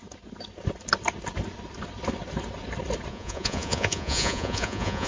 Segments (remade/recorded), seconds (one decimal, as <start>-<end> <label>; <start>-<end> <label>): 0.0-3.1 recorded; 3.1-5.1 remade